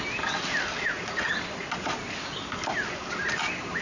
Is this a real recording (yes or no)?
yes